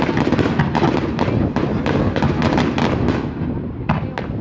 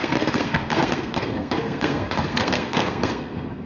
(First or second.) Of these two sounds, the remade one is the second